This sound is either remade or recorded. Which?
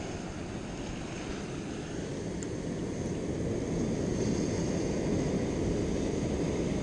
recorded